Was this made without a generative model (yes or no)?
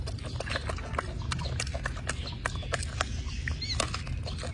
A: yes